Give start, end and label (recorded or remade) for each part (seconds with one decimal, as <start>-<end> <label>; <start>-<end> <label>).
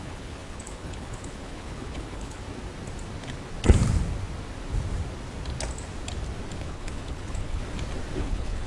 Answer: 0.0-2.4 remade; 2.4-6.6 recorded; 6.6-7.6 remade; 7.6-8.2 recorded; 8.2-8.7 remade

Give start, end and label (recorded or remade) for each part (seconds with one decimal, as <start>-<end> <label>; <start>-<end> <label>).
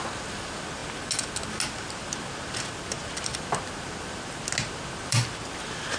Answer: 0.0-6.0 recorded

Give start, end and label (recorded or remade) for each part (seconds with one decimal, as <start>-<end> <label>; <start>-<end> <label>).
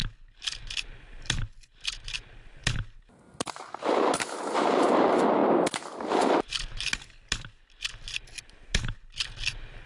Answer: 0.0-9.9 recorded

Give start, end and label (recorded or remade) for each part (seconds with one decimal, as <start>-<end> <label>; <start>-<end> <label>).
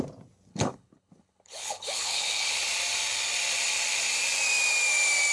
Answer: 0.0-0.5 recorded; 0.5-2.5 remade; 2.5-5.3 recorded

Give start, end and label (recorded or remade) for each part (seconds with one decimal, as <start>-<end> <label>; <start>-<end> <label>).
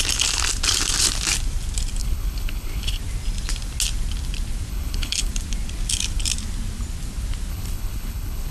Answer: 0.0-2.0 recorded; 2.0-3.0 remade; 3.0-4.7 recorded; 4.7-5.3 remade; 5.3-7.5 recorded; 7.5-8.5 remade